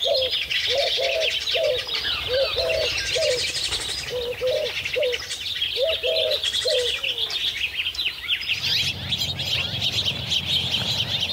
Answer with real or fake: real